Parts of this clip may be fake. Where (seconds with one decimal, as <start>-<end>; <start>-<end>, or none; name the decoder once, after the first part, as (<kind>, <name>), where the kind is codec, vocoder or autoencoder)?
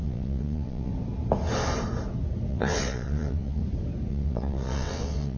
0.0-0.9 (vocoder, WaveNeXt); 2.5-3.6; 4.1-5.4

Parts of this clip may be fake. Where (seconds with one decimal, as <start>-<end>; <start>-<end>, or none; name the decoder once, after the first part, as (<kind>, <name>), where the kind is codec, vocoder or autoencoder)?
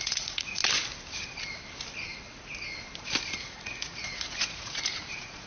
0.0-0.6 (vocoder, Vocos); 3.4-5.5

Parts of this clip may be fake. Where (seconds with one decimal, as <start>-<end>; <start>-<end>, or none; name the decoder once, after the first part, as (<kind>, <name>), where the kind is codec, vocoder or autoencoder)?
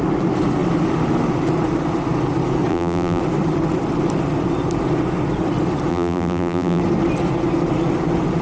2.7-3.2 (vocoder, BigVGAN v2); 5.9-6.8